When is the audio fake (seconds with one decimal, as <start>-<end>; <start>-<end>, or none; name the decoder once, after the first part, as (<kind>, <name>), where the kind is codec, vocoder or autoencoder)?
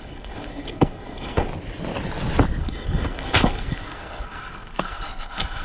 0.0-1.5 (codec, SNAC); 2.6-5.6